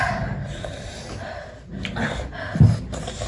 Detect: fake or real real